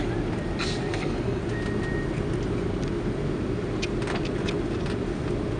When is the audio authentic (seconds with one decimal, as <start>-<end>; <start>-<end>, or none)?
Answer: 0.0-0.8; 1.4-5.6